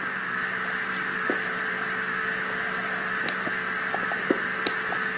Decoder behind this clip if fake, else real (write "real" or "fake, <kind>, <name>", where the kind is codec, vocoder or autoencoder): real